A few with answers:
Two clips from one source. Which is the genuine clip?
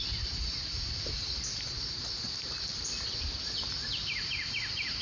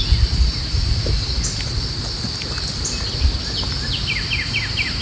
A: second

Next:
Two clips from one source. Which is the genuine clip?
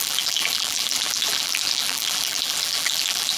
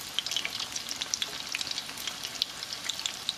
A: second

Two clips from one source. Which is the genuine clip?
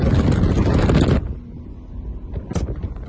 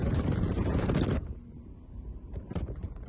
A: first